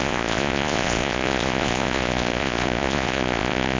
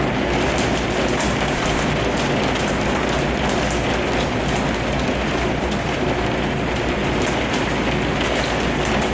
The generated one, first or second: first